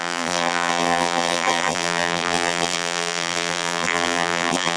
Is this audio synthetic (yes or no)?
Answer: yes